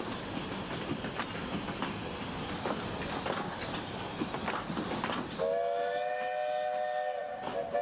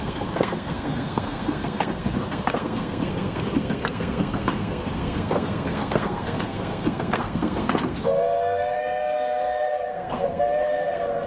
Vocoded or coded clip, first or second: second